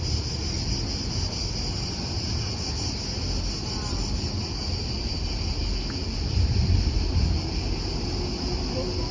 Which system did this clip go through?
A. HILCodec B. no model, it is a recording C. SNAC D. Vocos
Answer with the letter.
B